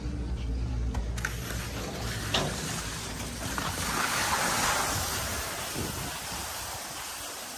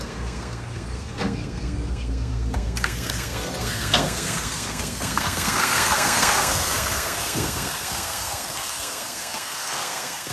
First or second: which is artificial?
second